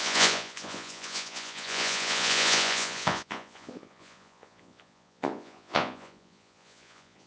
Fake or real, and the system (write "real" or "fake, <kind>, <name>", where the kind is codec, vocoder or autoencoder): fake, vocoder, Vocos